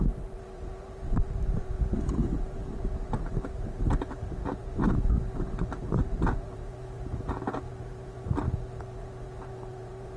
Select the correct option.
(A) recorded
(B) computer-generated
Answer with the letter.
B